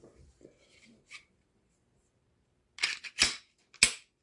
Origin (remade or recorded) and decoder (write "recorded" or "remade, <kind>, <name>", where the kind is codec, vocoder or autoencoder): recorded